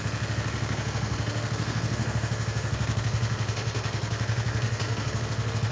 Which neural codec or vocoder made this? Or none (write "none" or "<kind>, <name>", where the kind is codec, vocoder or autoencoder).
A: codec, SNAC